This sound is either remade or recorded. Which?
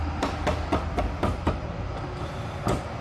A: recorded